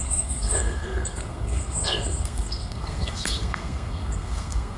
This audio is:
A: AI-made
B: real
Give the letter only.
A